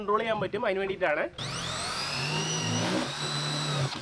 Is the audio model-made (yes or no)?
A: yes